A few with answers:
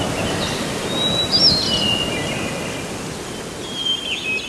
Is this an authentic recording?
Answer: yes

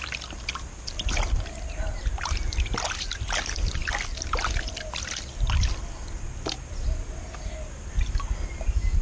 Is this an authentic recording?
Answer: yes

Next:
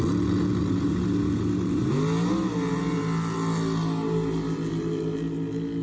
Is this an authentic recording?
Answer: yes